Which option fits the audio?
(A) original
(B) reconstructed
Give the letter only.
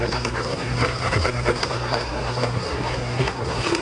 B